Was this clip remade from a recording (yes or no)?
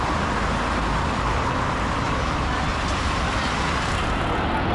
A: no